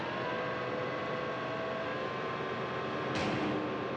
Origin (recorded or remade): recorded